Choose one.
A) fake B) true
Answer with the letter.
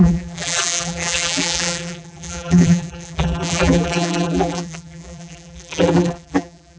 A